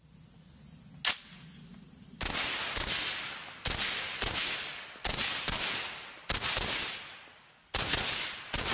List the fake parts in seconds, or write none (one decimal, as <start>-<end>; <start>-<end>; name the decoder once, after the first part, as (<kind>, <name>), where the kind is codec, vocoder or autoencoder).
none